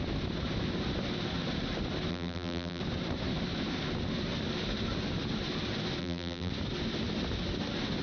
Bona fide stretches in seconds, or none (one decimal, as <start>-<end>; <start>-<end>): 0.0-2.1; 2.8-6.0; 6.5-8.0